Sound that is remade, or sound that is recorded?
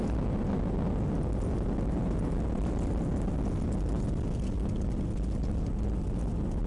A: recorded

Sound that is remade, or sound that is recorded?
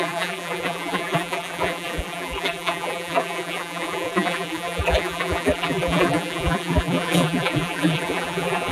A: remade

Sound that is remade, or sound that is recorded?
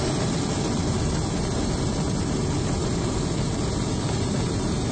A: recorded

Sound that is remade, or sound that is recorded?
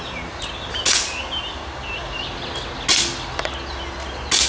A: recorded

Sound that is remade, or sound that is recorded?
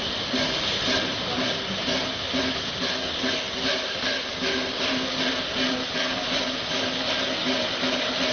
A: recorded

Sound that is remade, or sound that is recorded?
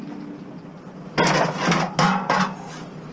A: recorded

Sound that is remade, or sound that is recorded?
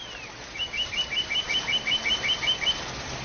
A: recorded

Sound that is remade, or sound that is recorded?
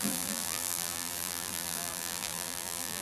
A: remade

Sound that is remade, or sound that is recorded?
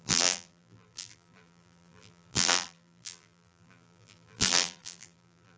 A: remade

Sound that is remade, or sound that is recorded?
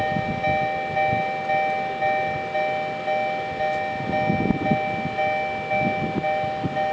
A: recorded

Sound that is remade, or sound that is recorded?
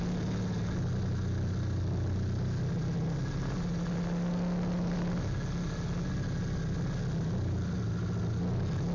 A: recorded